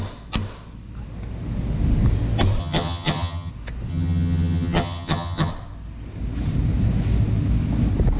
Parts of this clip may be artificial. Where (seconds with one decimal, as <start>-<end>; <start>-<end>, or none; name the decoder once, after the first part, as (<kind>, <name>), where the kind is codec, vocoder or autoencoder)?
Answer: 2.6-3.5 (vocoder, HiFi-GAN); 3.9-5.5